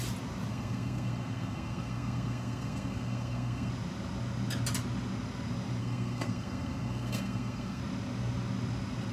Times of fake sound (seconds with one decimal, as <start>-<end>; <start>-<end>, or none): 0.5-3.7; 5.8-7.8